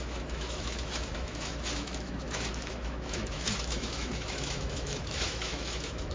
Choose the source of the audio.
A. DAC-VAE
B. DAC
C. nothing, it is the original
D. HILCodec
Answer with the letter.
A